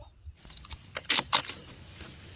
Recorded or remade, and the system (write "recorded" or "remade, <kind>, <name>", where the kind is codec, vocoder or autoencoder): recorded